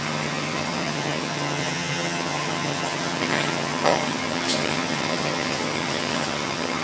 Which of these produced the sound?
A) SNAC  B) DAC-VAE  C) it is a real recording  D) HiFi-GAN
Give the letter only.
D